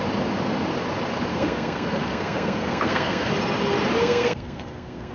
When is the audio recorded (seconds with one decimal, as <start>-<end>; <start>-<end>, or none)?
0.0-1.3; 3.3-4.0